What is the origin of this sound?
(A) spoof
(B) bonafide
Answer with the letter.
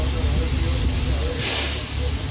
B